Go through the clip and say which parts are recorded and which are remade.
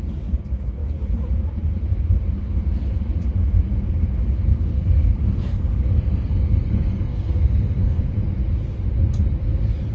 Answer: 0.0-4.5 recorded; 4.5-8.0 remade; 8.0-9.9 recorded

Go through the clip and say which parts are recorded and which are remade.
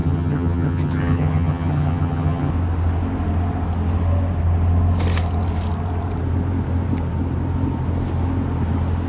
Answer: 0.0-2.5 remade; 2.5-9.1 recorded